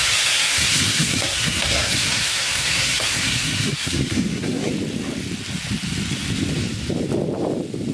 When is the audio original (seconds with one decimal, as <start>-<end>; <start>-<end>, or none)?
4.7-7.9